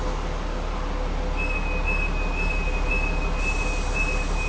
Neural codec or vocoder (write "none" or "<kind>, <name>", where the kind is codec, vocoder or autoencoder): none